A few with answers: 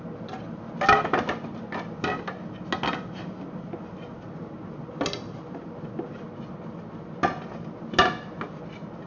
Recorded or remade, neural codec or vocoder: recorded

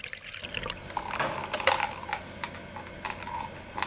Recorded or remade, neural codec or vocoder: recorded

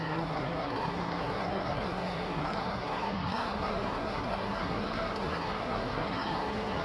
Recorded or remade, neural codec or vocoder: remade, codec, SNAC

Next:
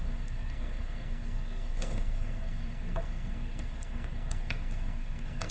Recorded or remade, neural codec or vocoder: remade, codec, SNAC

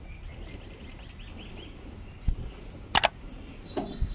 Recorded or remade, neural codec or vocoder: recorded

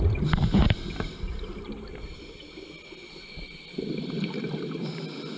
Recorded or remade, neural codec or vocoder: recorded